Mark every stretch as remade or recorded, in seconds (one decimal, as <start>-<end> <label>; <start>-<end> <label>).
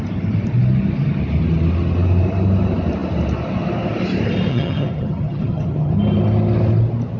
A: 0.0-4.5 recorded; 4.5-5.9 remade; 5.9-7.2 recorded